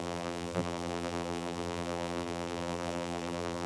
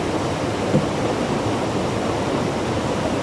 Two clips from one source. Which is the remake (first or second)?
first